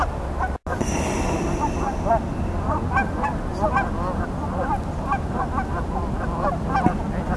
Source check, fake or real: real